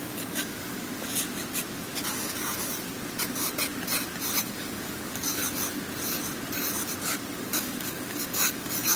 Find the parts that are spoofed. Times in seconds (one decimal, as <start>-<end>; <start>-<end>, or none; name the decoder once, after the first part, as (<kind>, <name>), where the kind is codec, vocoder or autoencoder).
0.0-0.9 (codec, DAC); 4.4-5.4; 7.3-9.0